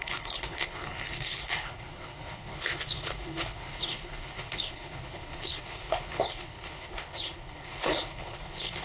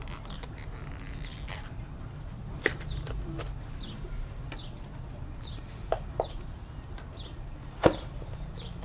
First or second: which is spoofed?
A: first